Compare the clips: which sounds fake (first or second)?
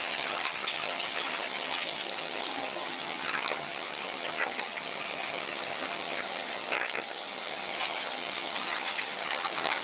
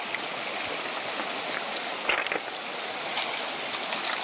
first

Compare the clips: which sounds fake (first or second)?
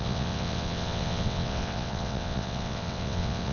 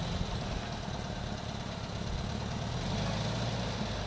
first